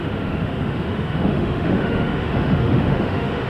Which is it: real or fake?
fake